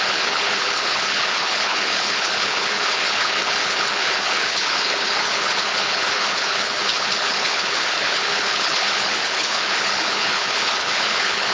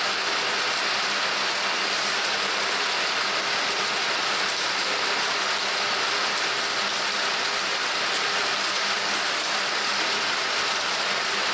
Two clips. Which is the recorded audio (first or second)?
second